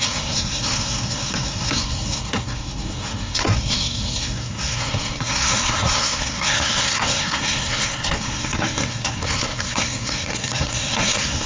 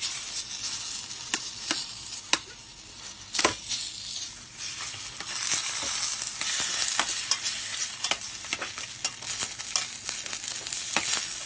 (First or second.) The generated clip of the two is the first